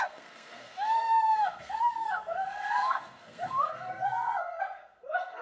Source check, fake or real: fake